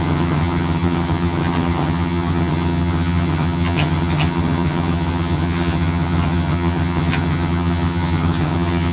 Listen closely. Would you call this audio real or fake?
fake